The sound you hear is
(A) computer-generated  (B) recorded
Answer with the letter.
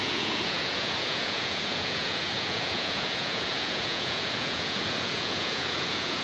A